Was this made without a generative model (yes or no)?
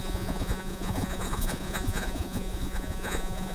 no